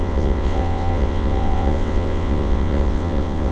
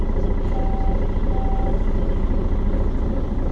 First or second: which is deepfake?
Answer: first